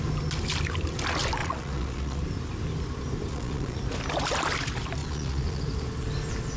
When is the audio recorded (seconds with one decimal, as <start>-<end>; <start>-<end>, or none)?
0.0-1.4; 2.2-3.3; 3.8-5.0; 5.6-6.6